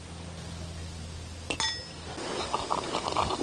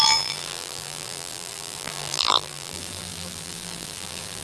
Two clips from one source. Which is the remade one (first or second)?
second